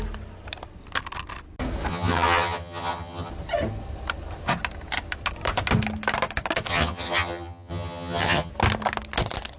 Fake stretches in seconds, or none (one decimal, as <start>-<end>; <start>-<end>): 1.9-3.3; 6.7-8.5

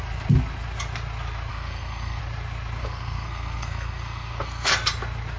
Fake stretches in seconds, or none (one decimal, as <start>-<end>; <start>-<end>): 1.5-2.2; 2.8-4.7

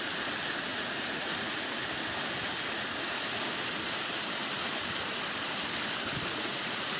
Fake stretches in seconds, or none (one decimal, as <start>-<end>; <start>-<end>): 0.7-1.6; 6.3-7.0

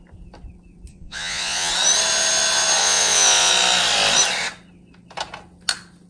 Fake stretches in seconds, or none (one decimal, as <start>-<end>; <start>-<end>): 0.9-1.7; 2.8-3.5

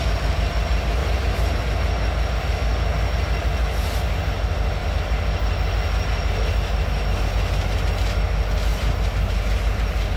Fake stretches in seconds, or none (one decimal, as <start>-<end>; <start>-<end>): 1.0-1.6

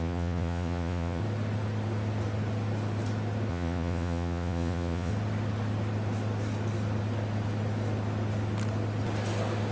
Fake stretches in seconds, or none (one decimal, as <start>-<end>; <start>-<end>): 0.0-1.2; 3.5-5.1